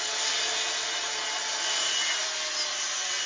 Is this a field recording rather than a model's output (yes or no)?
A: yes